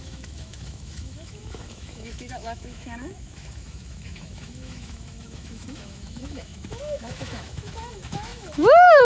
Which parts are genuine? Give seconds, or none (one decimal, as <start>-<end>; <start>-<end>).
none